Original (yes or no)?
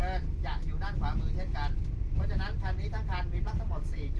yes